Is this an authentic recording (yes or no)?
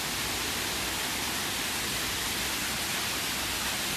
yes